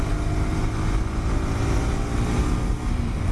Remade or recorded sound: recorded